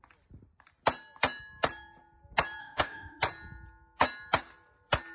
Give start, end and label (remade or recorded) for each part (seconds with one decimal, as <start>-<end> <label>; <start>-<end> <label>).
0.0-2.6 recorded; 2.6-3.2 remade; 3.2-5.1 recorded